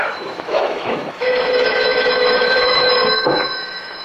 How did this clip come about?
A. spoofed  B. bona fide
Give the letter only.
A